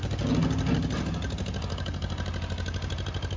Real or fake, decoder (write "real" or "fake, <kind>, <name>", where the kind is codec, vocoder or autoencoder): real